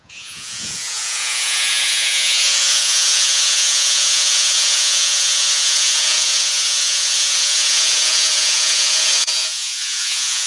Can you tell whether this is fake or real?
fake